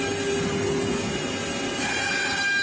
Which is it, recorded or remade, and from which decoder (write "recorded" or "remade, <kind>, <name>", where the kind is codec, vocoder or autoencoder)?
recorded